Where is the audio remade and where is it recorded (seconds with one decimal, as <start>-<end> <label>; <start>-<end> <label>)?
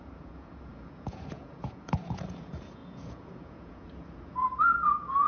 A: 0.0-5.3 remade